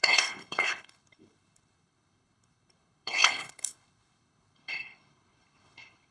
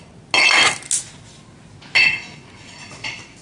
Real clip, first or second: second